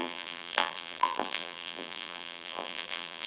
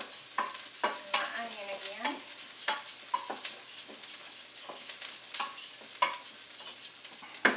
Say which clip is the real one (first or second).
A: second